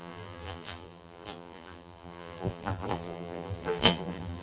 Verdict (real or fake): fake